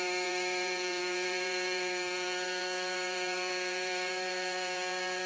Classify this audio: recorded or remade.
remade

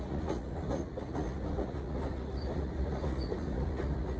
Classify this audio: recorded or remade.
remade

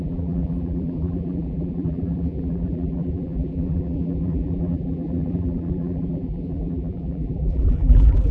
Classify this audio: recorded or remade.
remade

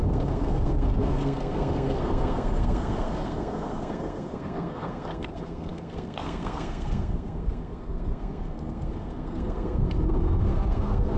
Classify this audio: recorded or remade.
remade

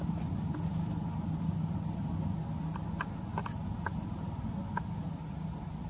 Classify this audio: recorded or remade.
remade